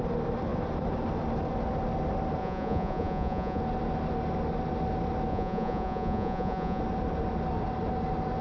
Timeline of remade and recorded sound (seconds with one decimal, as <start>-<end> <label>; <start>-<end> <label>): 0.0-2.4 recorded; 2.4-3.6 remade; 3.6-5.3 recorded; 5.3-6.8 remade; 6.8-8.4 recorded